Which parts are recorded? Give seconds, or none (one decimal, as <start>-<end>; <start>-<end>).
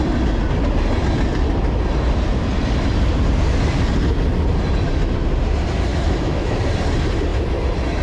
0.0-5.9; 6.6-8.0